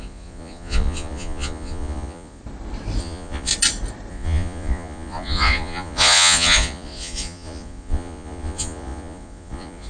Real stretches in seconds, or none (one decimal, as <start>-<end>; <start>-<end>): 2.4-3.0; 3.5-4.1